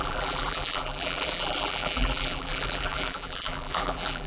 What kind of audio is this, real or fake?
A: fake